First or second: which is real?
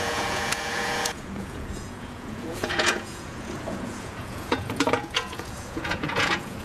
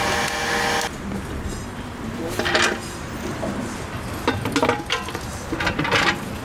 second